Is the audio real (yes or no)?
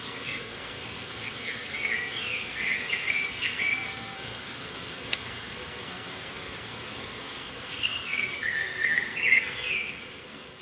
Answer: no